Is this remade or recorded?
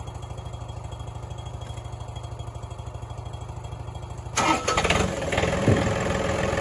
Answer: recorded